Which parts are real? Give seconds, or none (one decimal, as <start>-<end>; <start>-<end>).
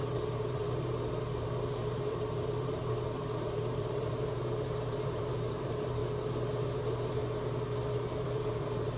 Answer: 6.0-6.6; 7.2-7.9